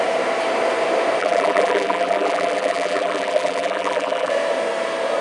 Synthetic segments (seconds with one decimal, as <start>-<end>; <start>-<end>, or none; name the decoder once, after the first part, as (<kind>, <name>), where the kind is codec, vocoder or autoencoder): 1.2-4.3 (vocoder, BigVGAN v2)